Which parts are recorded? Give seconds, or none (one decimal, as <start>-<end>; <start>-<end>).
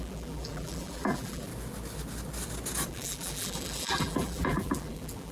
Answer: 1.5-2.9